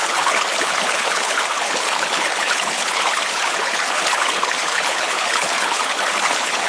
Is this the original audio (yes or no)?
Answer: no